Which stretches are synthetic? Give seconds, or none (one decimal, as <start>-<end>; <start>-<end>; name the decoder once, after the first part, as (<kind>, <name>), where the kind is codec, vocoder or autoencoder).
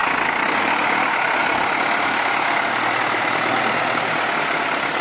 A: none